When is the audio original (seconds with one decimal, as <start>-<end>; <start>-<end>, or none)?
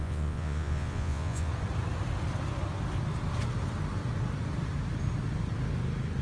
1.5-6.2